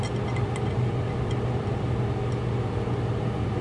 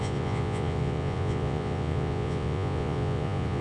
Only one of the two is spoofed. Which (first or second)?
second